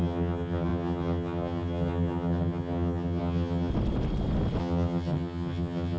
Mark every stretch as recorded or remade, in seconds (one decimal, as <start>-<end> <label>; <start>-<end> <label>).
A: 0.0-3.7 remade; 3.7-4.6 recorded; 4.6-6.0 remade

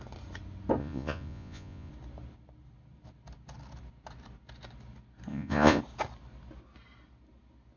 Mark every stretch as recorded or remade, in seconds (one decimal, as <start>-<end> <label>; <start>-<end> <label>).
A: 0.0-0.8 recorded; 0.8-1.9 remade; 1.9-5.3 recorded; 5.3-5.8 remade; 5.8-7.8 recorded

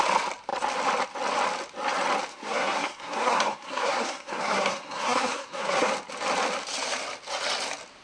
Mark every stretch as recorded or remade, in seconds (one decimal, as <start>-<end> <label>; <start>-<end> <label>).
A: 0.0-2.3 recorded; 2.3-5.9 remade; 5.9-8.0 recorded

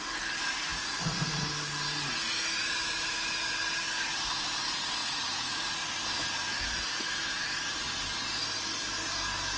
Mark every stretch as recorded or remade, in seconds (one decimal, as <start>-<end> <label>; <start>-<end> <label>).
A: 0.0-5.0 recorded; 5.0-5.7 remade; 5.7-6.5 recorded; 6.5-7.1 remade; 7.1-9.6 recorded